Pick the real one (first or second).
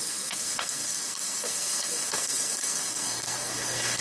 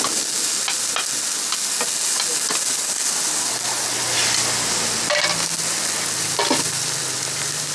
second